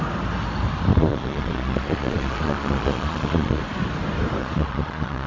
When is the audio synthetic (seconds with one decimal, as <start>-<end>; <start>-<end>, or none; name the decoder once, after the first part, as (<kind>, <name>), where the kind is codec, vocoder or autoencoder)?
0.9-3.6 (vocoder, Vocos); 4.4-5.3